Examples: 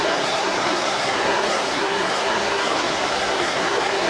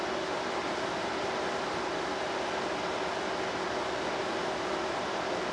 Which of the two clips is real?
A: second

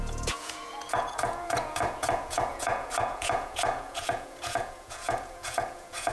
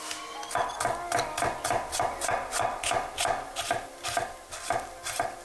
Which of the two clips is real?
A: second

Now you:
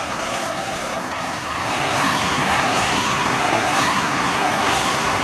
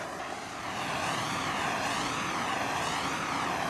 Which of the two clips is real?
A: second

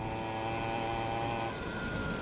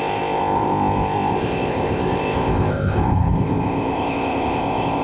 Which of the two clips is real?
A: first